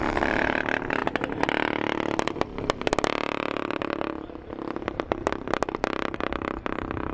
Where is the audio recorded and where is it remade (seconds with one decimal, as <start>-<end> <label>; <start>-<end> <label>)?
0.0-7.1 recorded